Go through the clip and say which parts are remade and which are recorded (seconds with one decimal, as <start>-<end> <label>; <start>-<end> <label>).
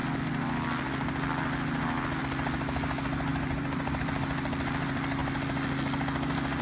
0.0-3.3 recorded; 3.3-4.0 remade; 4.0-6.6 recorded